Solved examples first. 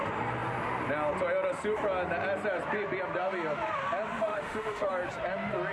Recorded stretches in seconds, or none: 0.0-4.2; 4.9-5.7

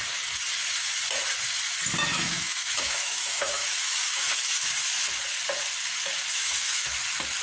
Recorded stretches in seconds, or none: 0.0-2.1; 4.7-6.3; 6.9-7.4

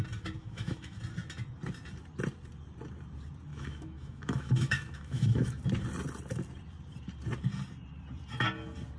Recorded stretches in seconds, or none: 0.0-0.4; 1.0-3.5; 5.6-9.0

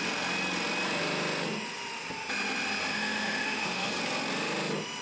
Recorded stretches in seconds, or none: 0.0-2.9; 3.9-5.0